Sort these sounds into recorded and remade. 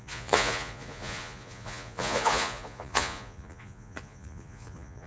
remade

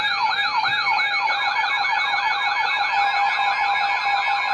recorded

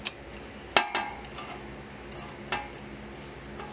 recorded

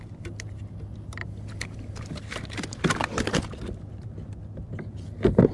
recorded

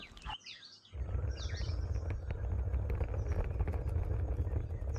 recorded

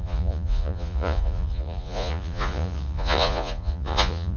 remade